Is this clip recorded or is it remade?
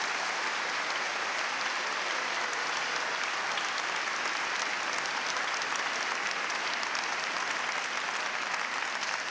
recorded